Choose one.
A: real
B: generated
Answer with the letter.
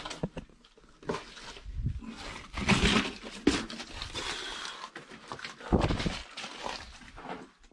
A